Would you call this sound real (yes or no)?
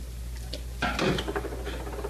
yes